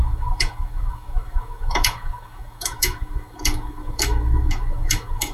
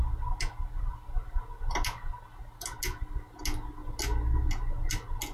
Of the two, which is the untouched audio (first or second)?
second